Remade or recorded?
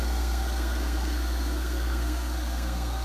remade